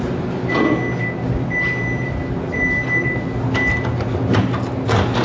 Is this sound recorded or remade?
recorded